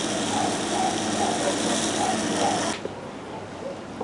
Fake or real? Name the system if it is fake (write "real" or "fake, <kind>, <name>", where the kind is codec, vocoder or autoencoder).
real